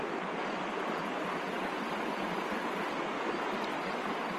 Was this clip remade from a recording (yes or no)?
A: no